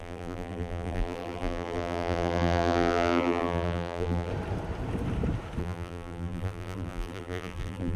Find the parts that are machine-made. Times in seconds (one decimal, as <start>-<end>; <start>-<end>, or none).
0.0-4.3; 5.6-8.0